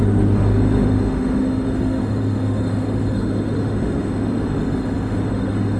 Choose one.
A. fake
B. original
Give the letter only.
A